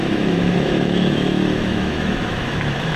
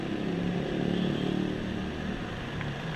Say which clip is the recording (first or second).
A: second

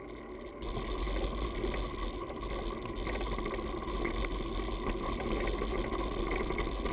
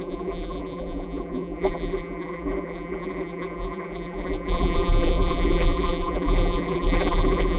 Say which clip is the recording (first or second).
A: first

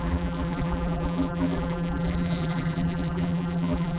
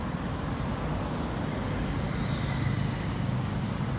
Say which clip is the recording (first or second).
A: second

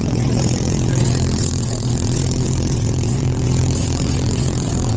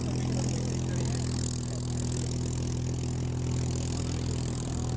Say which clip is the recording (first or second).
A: second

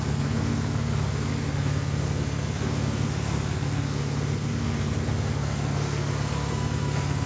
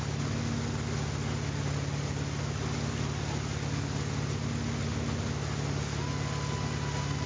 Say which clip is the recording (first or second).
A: second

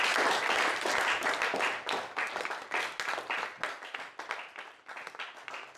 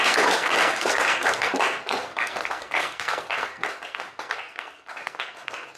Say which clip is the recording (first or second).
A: first